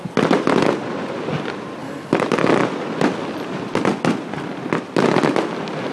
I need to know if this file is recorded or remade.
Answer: recorded